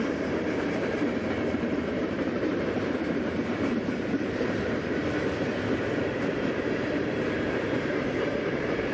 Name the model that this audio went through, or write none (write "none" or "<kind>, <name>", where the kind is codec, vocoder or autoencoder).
vocoder, BigVGAN v2